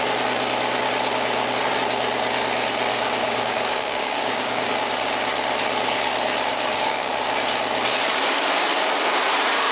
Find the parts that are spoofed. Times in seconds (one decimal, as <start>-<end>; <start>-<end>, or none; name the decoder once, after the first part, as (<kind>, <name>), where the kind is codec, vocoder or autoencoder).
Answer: 2.9-4.7 (codec, DAC); 6.5-7.1